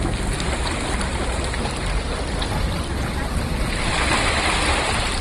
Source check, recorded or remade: recorded